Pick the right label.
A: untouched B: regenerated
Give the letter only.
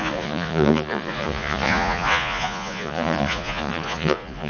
B